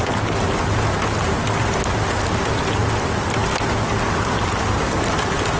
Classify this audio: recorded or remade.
recorded